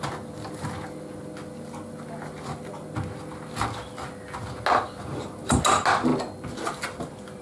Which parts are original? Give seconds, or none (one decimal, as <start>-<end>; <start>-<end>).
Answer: 0.0-7.4